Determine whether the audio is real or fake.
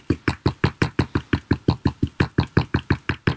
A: real